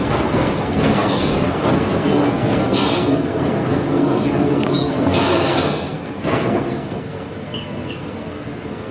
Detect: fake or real fake